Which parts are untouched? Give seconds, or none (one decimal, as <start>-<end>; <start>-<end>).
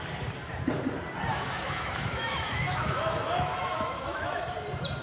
0.0-1.3; 4.3-5.0